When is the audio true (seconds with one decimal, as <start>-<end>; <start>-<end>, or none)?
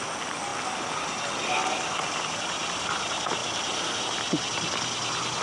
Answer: 0.0-5.4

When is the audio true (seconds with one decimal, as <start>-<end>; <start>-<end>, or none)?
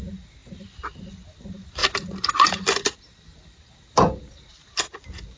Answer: 0.0-5.4